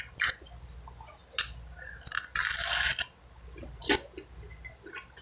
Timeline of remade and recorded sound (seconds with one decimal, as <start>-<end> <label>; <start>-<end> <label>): 0.0-5.2 recorded